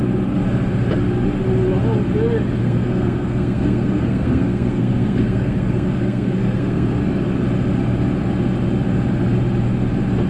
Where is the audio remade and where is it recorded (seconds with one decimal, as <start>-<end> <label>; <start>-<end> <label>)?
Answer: 0.0-2.6 recorded; 2.6-7.0 remade; 7.0-10.3 recorded